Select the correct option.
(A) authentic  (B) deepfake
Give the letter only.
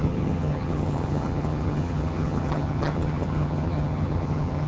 B